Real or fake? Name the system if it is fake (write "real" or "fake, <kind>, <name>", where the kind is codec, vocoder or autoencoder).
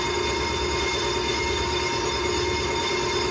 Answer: real